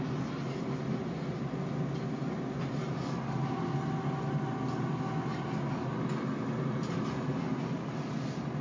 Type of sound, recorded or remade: recorded